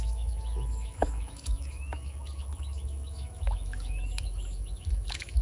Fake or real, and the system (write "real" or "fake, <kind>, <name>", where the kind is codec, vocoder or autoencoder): fake, autoencoder, DAC-VAE